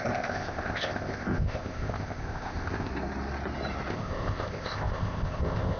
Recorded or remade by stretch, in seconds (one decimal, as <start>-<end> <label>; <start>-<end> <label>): 0.0-2.9 remade; 2.9-3.9 recorded; 3.9-5.8 remade